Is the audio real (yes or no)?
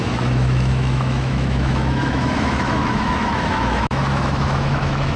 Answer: no